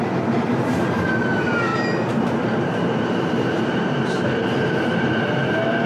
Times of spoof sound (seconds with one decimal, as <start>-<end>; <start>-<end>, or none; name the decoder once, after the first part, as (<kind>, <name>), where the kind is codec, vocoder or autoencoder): 1.7-5.2 (vocoder, BigVGAN v2)